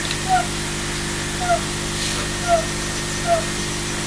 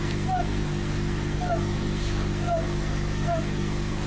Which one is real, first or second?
first